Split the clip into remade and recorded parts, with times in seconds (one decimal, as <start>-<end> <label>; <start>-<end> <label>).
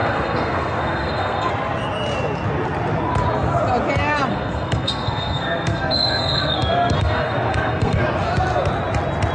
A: 0.0-1.5 remade; 1.5-4.3 recorded; 4.3-8.0 remade; 8.0-9.3 recorded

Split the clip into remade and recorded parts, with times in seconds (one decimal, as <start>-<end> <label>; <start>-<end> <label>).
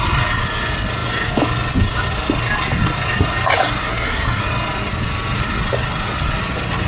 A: 0.0-3.9 recorded; 3.9-4.4 remade; 4.4-6.9 recorded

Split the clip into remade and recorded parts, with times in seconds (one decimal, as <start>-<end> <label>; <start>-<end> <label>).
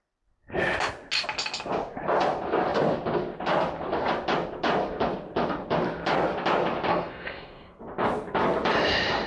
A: 0.0-6.9 recorded; 6.9-7.8 remade; 7.8-9.3 recorded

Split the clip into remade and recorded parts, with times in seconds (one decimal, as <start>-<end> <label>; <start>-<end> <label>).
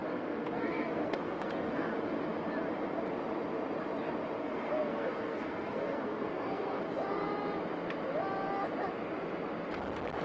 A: 0.0-1.9 remade; 1.9-4.4 recorded; 4.4-6.8 remade; 6.8-10.2 recorded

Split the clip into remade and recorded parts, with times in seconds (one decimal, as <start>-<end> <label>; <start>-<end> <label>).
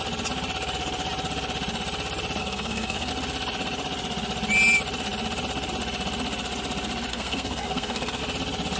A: 0.0-2.4 recorded; 2.4-3.1 remade; 3.1-7.1 recorded; 7.1-8.2 remade; 8.2-8.8 recorded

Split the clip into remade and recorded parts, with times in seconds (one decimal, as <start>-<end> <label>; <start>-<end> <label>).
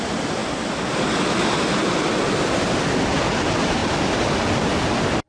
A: 0.0-5.3 recorded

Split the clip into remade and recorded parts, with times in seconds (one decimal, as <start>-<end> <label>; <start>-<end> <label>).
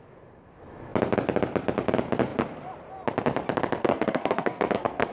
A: 0.0-3.8 recorded; 3.8-5.1 remade